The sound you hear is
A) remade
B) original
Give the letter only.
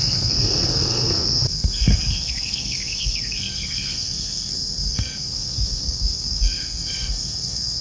A